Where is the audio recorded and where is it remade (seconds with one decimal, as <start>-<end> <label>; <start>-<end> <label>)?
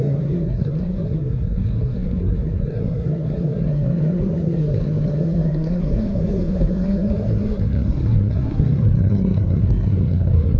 0.0-10.6 remade